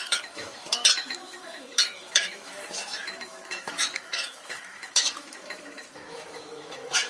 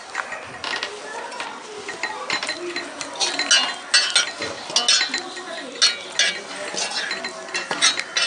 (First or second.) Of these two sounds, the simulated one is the first